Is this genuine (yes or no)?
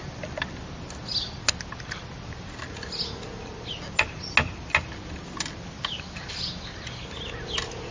yes